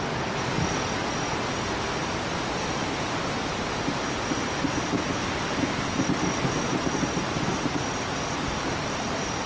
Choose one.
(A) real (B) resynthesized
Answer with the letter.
A